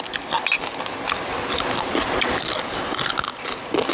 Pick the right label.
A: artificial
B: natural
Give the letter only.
B